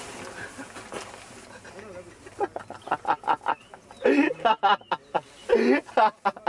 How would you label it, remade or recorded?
recorded